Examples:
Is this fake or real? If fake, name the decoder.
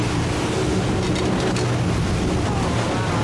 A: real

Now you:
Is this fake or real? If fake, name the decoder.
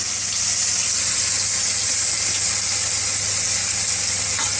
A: real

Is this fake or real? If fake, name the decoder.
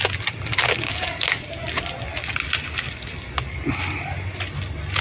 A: real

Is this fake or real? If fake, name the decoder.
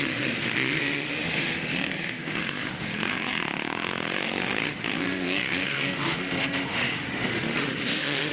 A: fake, autoencoder, DAC-VAE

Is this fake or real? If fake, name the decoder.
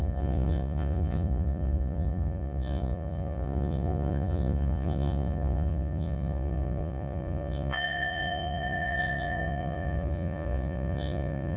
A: fake, vocoder, Vocos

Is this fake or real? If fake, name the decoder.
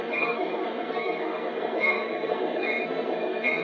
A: fake, codec, SNAC